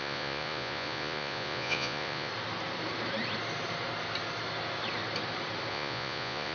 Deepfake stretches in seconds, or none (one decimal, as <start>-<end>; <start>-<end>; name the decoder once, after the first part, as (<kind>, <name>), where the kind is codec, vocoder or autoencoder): 0.0-2.3 (vocoder, Vocos); 5.7-6.5